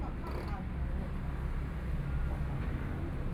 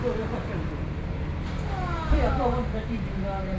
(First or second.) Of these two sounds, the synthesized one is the second